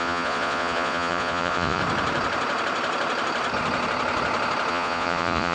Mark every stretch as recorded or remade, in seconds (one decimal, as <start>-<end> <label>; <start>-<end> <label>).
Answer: 0.0-1.8 remade; 1.8-4.7 recorded; 4.7-5.5 remade